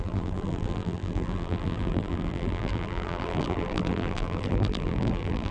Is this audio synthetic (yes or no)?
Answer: yes